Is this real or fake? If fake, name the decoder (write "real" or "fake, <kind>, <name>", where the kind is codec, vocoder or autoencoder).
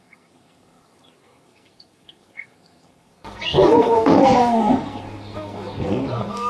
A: fake, codec, SNAC